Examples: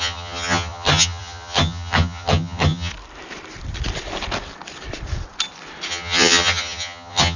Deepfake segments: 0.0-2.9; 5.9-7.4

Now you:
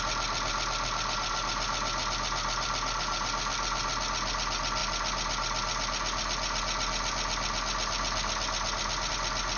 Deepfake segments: none

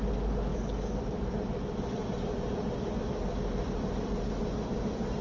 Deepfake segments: none

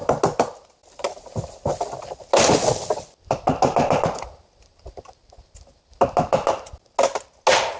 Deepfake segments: none

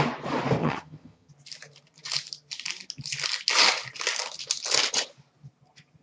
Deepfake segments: 0.6-1.3

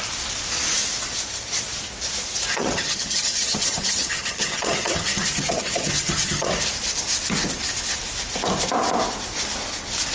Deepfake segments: 2.5-6.5

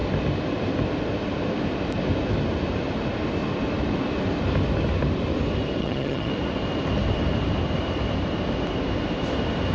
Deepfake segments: 5.8-6.3